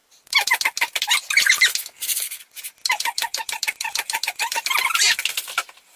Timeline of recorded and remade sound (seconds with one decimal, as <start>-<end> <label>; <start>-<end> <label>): 0.0-1.8 recorded; 1.8-2.4 remade; 2.4-6.0 recorded